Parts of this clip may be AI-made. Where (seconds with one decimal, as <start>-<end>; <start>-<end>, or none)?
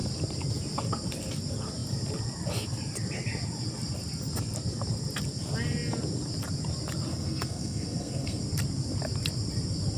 7.1-8.4